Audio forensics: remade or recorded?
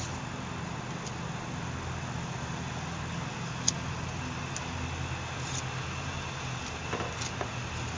recorded